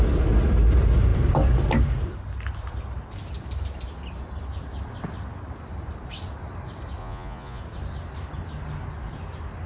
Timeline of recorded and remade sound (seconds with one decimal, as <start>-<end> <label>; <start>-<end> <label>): 0.0-7.0 recorded; 7.0-7.6 remade; 7.6-9.7 recorded